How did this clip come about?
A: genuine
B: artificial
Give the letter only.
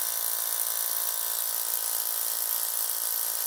A